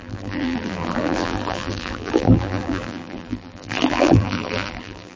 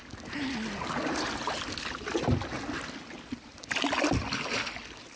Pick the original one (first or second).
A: second